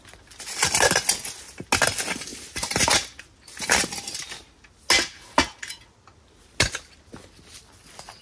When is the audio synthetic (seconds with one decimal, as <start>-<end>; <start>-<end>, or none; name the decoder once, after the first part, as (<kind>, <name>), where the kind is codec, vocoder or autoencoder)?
none